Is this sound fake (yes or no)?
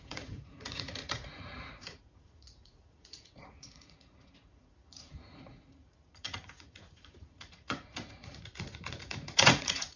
yes